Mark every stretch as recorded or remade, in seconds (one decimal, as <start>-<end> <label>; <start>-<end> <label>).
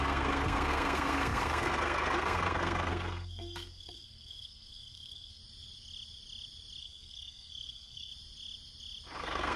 0.0-5.4 remade; 5.4-6.8 recorded; 6.8-8.1 remade; 8.1-9.2 recorded; 9.2-9.6 remade